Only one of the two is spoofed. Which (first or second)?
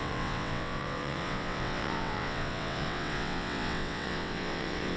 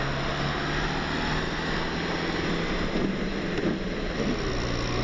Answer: first